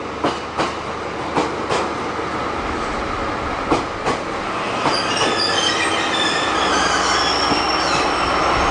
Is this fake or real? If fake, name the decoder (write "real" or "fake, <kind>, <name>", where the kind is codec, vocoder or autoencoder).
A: real